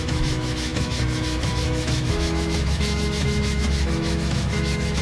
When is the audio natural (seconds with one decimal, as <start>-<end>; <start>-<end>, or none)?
none